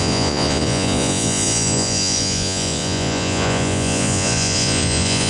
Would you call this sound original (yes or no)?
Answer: no